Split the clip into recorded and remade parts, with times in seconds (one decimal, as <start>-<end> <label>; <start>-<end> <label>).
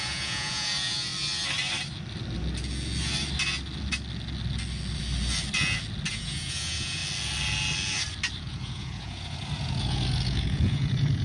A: 0.0-1.1 remade; 1.1-6.1 recorded; 6.1-7.0 remade; 7.0-8.4 recorded; 8.4-11.2 remade